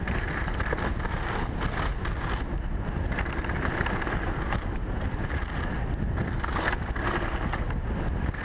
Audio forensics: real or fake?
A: real